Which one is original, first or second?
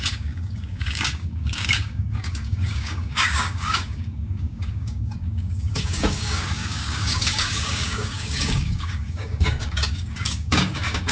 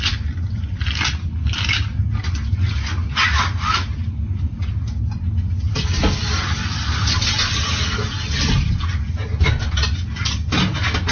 second